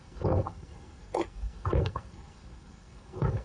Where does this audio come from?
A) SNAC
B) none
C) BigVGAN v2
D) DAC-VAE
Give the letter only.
A